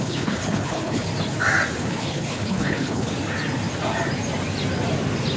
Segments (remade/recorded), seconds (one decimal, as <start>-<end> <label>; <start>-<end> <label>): 0.0-1.1 remade; 1.1-1.8 recorded; 1.8-3.1 remade; 3.1-5.4 recorded